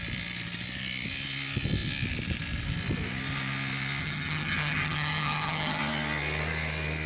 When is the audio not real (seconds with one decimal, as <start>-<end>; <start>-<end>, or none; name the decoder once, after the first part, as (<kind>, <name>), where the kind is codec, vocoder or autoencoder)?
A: 4.0-5.8 (vocoder, HiFi-GAN)